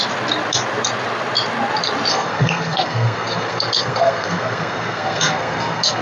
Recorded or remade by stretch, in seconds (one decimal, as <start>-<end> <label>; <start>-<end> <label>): 0.0-2.1 recorded; 2.1-6.0 remade